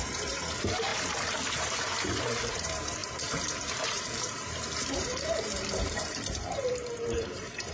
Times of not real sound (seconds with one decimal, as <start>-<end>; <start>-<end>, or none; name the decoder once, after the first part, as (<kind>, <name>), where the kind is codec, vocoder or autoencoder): 0.0-7.7 (vocoder, BigVGAN v2)